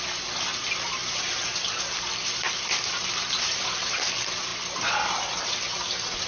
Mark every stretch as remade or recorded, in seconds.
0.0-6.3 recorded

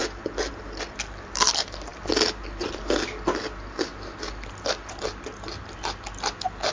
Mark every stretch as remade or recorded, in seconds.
0.0-6.7 recorded